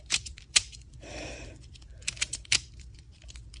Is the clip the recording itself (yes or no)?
no